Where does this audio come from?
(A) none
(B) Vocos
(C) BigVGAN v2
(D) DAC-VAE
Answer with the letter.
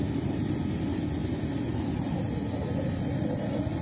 A